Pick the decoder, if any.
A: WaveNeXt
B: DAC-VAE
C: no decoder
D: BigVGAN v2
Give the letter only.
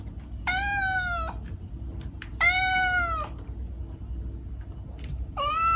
C